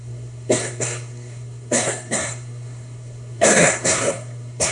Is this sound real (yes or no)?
no